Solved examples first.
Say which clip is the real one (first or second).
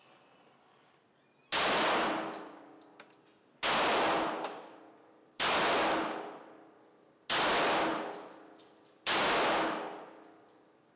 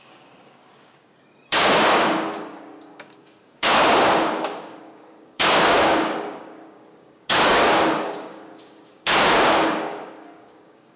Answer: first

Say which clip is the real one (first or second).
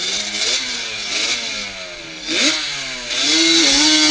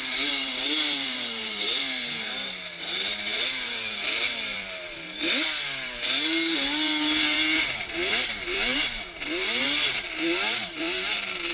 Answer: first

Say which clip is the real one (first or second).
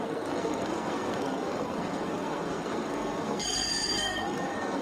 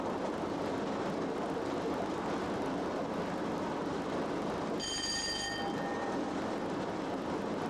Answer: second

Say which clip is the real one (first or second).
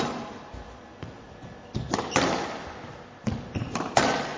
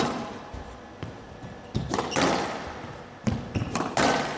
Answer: first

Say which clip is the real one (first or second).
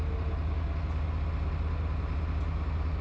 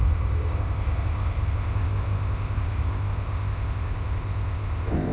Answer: first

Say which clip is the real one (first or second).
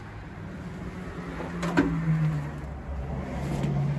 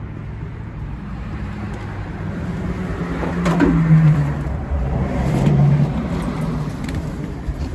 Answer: first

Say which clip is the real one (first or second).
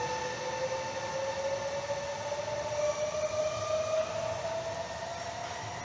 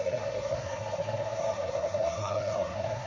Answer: first